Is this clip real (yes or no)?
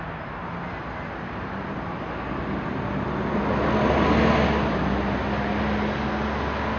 yes